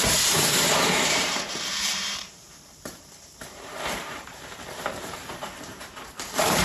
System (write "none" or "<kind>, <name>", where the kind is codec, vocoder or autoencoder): vocoder, BigVGAN v2